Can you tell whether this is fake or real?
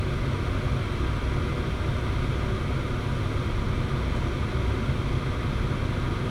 real